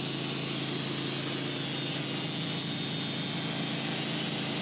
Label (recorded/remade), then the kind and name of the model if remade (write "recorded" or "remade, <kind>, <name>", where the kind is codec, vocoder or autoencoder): recorded